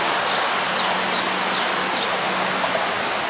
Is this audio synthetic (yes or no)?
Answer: no